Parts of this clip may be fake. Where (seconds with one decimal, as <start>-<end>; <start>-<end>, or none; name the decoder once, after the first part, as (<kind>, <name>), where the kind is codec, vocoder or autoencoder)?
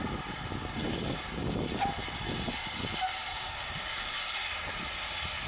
0.8-1.7 (codec, DAC); 3.3-4.7